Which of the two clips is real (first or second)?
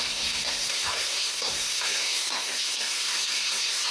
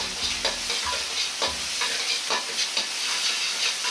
second